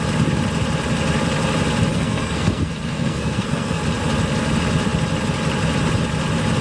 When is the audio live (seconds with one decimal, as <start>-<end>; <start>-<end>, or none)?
0.0-1.9; 3.8-6.6